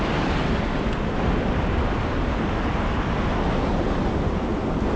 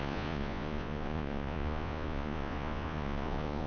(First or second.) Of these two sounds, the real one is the first